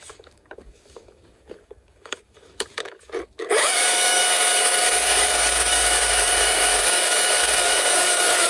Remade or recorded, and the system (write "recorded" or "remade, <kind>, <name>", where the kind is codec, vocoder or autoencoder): remade, codec, DAC